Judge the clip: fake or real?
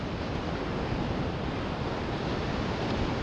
real